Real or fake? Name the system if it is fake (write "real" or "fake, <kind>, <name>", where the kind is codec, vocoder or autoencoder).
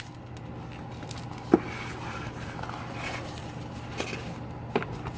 real